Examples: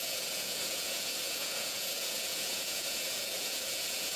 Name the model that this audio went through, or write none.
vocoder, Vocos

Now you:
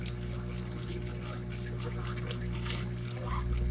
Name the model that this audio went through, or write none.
none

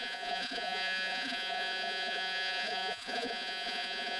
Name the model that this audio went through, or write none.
vocoder, Vocos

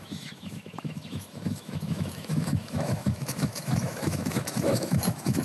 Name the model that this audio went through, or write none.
autoencoder, DAC-VAE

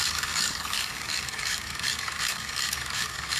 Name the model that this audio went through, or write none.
codec, DAC